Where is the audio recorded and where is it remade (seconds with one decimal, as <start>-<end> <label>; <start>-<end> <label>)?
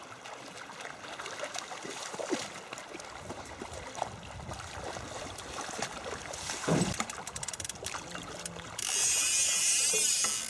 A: 0.0-6.7 recorded; 6.7-10.0 remade; 10.0-10.5 recorded